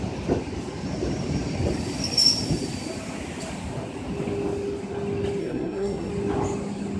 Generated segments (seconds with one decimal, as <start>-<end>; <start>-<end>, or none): 5.4-6.1